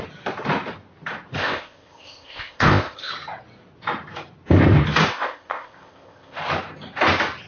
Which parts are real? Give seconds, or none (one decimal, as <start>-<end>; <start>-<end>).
0.0-1.4; 3.1-5.1; 6.4-7.5